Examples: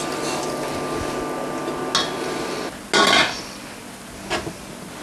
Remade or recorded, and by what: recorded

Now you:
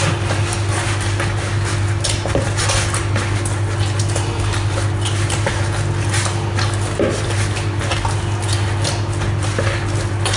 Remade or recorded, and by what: recorded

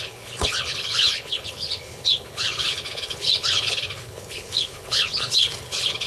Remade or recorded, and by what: remade, codec, HILCodec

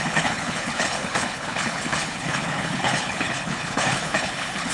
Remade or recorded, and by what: remade, codec, HILCodec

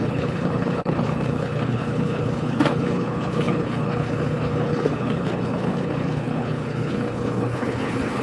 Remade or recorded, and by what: remade, codec, HILCodec